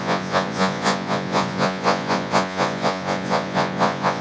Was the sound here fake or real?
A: fake